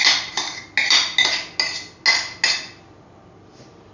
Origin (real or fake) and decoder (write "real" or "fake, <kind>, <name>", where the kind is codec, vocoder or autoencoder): real